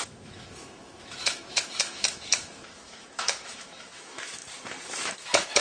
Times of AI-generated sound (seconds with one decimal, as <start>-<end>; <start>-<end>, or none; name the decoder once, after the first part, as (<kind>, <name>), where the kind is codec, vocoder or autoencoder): 0.0-4.4 (autoencoder, DAC-VAE); 4.9-5.6